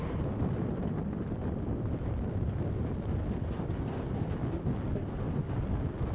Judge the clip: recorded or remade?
recorded